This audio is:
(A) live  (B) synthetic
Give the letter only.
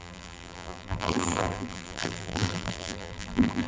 B